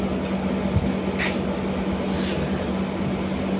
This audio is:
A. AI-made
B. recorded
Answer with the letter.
B